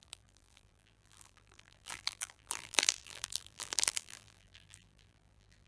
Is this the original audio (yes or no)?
no